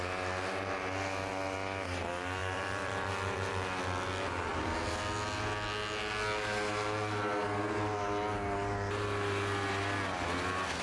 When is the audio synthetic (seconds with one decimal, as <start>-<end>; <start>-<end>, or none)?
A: 2.4-3.8; 4.5-5.0